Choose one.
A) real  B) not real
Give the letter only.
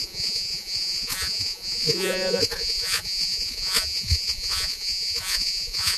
B